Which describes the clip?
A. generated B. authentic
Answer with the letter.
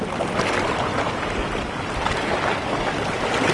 B